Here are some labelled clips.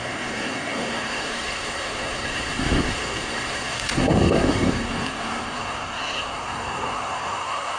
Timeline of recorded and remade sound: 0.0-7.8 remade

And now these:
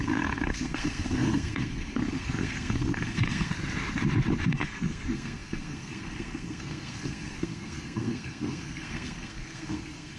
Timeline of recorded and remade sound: 0.0-3.5 remade; 3.5-4.5 recorded; 4.5-10.2 remade

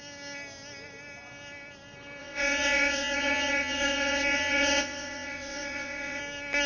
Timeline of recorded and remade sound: 0.0-2.2 recorded; 2.2-6.2 remade; 6.2-6.7 recorded